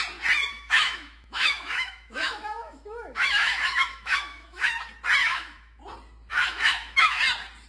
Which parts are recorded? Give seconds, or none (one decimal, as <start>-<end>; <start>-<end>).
0.0-0.5; 4.7-5.2; 5.8-6.3; 7.2-7.7